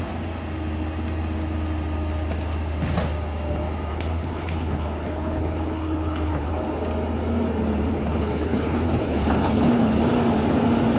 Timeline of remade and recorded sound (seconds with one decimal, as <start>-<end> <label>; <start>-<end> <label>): 0.0-3.9 recorded; 3.9-6.5 remade; 6.5-7.9 recorded; 7.9-10.0 remade; 10.0-11.0 recorded

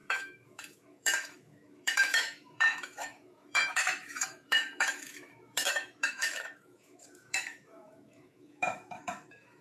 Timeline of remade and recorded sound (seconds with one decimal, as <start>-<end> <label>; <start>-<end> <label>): 0.0-9.6 remade

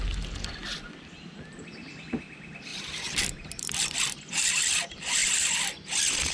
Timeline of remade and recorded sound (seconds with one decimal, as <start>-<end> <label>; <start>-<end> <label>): 0.0-2.7 recorded; 2.7-4.5 remade; 4.5-6.3 recorded

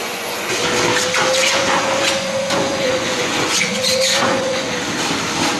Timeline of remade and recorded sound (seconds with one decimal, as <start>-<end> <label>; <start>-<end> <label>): 0.0-0.6 remade; 0.6-1.4 recorded; 1.4-4.7 remade; 4.7-5.6 recorded